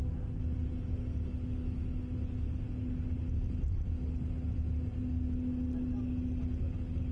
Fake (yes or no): no